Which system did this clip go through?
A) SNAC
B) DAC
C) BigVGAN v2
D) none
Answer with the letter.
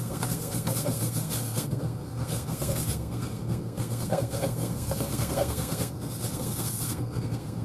A